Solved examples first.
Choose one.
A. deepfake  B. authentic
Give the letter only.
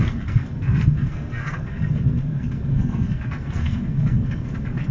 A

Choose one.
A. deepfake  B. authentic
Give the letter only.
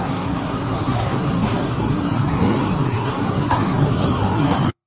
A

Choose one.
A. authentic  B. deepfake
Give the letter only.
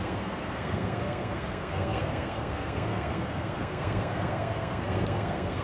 B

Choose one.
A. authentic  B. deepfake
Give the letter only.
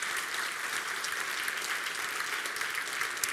A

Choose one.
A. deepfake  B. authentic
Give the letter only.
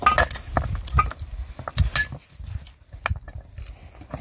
B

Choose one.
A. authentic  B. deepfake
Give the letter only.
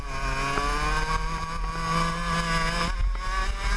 A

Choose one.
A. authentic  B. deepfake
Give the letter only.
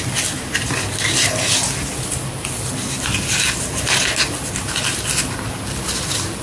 A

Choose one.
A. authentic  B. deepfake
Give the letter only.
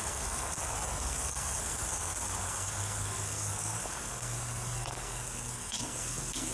B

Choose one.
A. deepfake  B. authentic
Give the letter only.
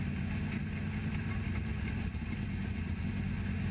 B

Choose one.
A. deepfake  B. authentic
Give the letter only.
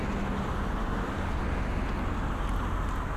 B